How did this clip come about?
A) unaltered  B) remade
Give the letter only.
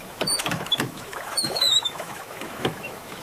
B